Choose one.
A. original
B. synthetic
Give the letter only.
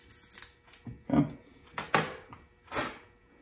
A